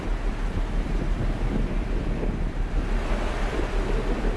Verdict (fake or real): fake